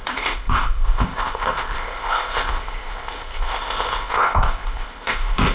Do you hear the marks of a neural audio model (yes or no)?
yes